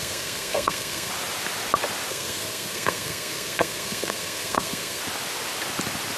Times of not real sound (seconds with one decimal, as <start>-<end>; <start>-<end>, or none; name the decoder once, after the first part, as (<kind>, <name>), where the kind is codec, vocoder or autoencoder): 0.0-1.1 (codec, SNAC); 2.1-5.0